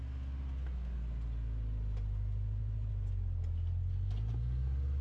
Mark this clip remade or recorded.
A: recorded